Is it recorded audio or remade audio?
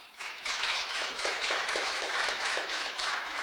remade